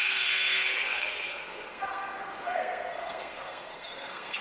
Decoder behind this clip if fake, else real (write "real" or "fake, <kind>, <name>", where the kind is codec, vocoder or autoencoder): fake, codec, SNAC